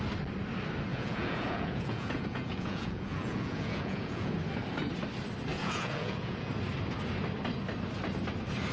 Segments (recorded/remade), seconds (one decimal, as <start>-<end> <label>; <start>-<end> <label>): 0.0-0.9 recorded; 0.9-4.3 remade; 4.3-5.5 recorded; 5.5-6.5 remade; 6.5-8.7 recorded